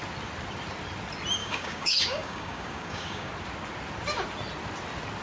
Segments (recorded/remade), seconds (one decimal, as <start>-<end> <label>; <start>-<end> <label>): 0.0-1.4 recorded; 1.4-3.3 remade; 3.3-5.2 recorded

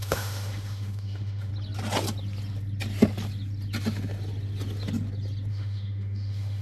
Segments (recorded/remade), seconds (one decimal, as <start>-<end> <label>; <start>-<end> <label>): 0.0-1.5 remade; 1.5-5.5 recorded; 5.5-6.6 remade

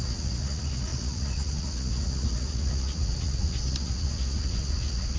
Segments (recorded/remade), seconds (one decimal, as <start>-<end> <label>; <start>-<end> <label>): 0.0-5.2 remade

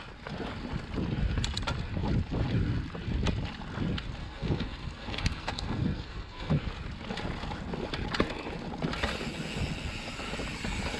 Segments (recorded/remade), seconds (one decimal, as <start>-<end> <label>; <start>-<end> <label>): 0.0-4.2 recorded; 4.2-6.7 remade; 6.7-11.0 recorded

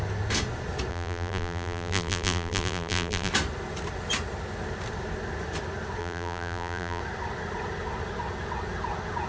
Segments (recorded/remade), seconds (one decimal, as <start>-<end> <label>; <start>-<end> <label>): 0.0-0.9 recorded; 0.9-3.3 remade; 3.3-6.0 recorded; 6.0-7.0 remade; 7.0-9.3 recorded

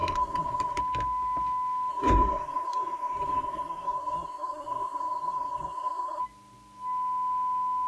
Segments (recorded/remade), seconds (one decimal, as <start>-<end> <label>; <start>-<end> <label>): 0.0-0.8 remade; 0.8-1.9 recorded; 1.9-6.2 remade; 6.2-7.9 recorded